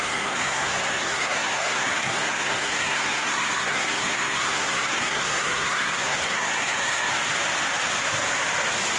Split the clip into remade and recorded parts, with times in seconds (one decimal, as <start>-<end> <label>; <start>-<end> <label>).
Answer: 0.0-7.1 remade; 7.1-9.0 recorded